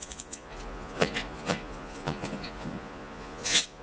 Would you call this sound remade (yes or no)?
yes